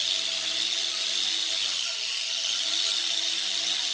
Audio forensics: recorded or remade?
recorded